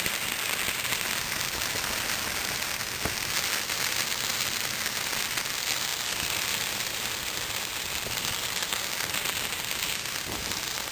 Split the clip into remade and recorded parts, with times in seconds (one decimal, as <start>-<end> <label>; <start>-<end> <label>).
0.0-10.9 recorded